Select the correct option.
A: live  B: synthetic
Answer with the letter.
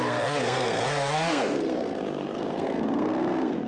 B